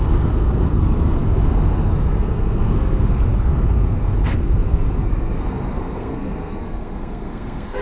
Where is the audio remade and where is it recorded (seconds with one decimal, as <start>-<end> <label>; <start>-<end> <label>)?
0.0-7.8 remade

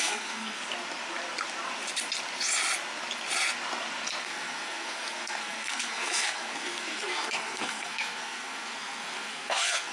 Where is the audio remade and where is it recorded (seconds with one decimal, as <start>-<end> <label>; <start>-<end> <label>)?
0.0-0.6 remade; 0.6-4.2 recorded; 4.2-9.9 remade